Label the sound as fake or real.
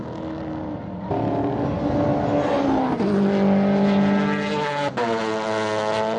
real